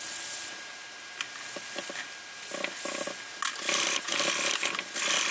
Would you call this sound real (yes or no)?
yes